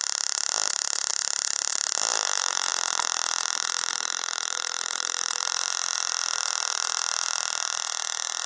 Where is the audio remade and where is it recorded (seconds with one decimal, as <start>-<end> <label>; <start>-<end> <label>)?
0.0-2.1 recorded; 2.1-2.7 remade; 2.7-3.9 recorded; 3.9-5.4 remade; 5.4-8.5 recorded